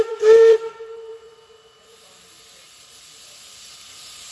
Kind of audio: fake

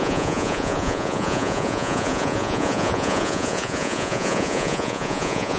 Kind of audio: fake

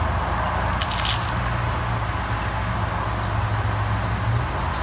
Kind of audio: real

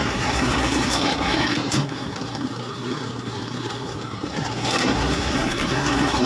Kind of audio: fake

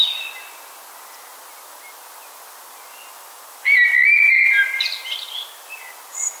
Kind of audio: real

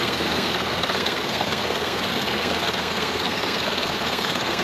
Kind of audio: fake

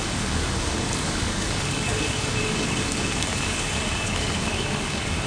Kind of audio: fake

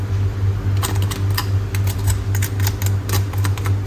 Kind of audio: real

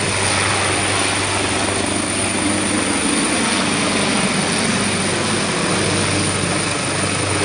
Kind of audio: real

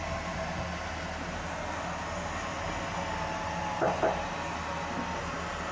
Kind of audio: real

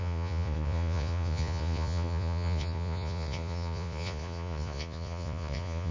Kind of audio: fake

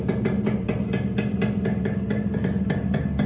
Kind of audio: real